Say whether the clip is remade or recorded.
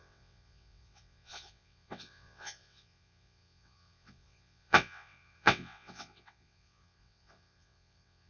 remade